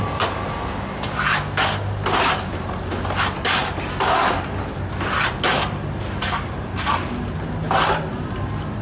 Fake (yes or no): no